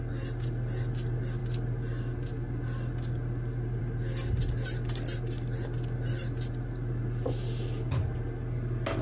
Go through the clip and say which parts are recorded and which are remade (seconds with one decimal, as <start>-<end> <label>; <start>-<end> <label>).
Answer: 0.0-9.0 recorded